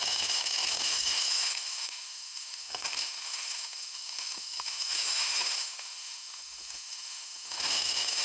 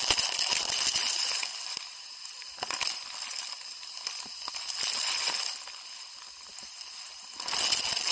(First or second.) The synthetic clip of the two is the first